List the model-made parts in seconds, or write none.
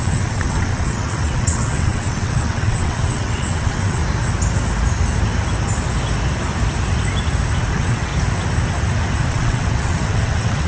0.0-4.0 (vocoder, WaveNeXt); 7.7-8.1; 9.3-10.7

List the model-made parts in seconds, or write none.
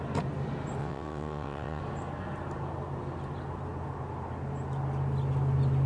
0.8-1.8 (vocoder, WaveNeXt)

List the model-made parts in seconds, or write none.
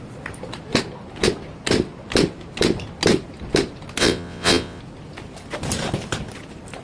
4.0-4.8 (vocoder, WaveNeXt)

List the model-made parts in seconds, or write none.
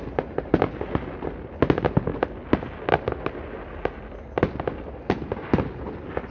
none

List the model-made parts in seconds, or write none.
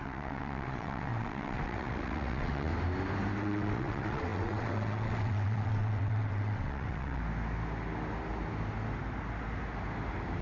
0.0-2.7 (vocoder, WaveNeXt); 3.4-7.2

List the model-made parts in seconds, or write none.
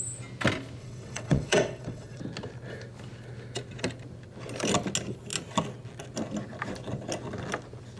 0.8-2.2 (vocoder, WaveNeXt)